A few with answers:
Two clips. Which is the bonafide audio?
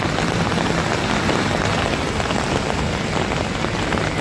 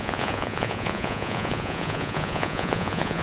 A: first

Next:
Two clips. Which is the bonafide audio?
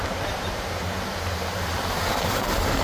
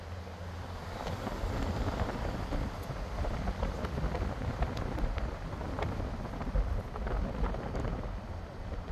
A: second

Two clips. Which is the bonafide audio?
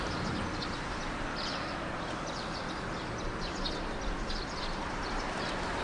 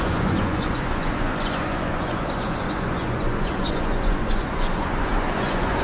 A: first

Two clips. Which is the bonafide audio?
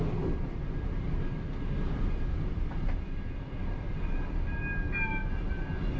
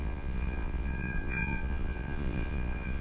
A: first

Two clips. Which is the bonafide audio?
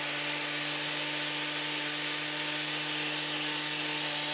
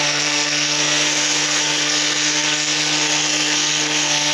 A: first